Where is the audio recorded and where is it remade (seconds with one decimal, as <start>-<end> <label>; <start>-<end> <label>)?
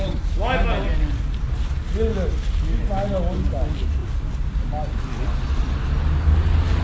0.0-6.8 recorded